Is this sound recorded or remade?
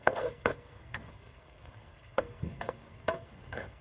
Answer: remade